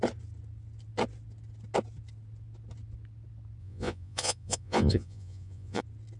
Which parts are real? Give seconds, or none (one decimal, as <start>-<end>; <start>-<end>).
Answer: 0.0-3.6; 5.8-6.2